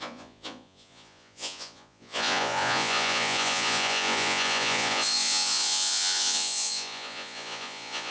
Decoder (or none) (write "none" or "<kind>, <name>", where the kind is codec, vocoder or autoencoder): vocoder, Vocos